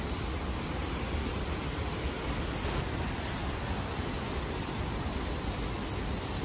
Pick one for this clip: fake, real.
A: real